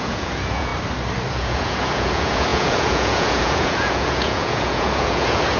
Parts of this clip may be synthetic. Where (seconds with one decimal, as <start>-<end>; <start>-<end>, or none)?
0.0-0.7; 1.3-5.6

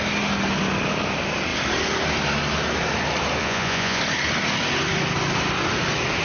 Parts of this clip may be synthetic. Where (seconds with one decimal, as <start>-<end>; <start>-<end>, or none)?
3.4-4.0